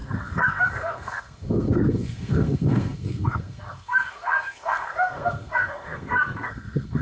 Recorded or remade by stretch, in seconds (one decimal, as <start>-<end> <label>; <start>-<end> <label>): 0.0-7.0 remade